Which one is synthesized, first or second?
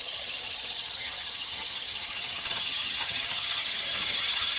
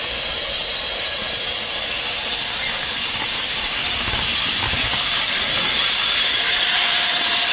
first